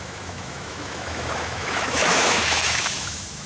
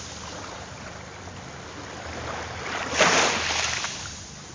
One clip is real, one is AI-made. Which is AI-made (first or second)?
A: first